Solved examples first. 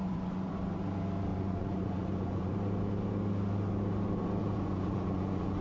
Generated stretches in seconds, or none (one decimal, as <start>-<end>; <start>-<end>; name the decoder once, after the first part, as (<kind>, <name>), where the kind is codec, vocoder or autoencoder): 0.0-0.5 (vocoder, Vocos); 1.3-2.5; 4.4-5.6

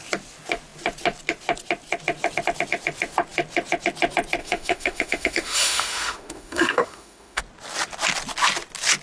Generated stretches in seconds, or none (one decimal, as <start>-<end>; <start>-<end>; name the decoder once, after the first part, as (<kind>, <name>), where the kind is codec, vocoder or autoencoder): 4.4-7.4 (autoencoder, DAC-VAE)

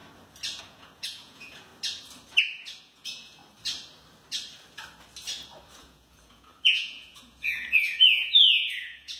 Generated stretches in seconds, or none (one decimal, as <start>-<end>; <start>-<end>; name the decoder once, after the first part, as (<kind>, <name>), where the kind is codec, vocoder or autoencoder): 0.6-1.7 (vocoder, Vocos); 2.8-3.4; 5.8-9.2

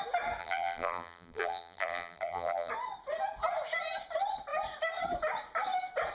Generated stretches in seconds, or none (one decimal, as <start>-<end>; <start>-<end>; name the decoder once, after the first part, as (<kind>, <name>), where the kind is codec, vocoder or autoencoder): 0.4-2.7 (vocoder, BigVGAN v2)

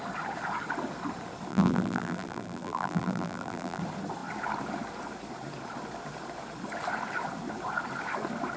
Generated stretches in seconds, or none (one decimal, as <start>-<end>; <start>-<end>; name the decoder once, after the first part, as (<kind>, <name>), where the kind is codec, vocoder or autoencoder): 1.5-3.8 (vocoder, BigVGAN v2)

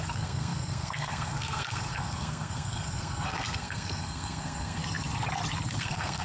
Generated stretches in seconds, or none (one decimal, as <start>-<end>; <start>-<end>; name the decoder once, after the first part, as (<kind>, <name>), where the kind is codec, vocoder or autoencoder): 0.0-4.8 (codec, SNAC); 5.7-6.2